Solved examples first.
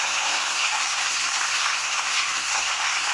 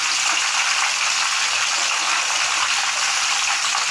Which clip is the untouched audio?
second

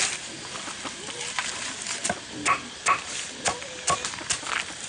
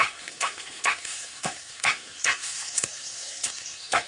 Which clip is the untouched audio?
first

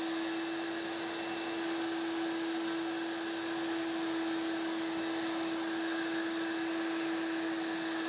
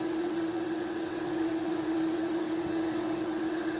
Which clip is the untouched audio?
first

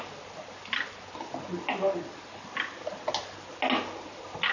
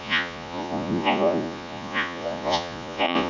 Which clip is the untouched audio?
first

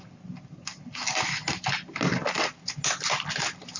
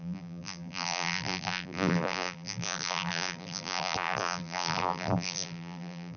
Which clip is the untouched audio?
first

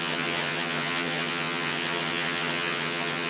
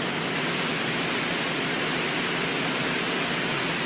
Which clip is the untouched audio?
second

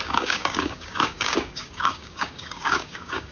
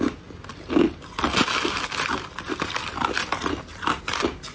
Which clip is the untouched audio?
second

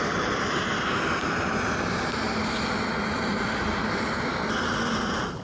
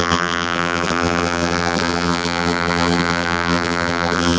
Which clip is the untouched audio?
first